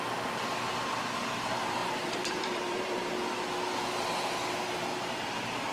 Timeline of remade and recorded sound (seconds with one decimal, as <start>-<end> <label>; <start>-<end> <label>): 0.0-1.8 recorded; 1.8-3.1 remade; 3.1-5.7 recorded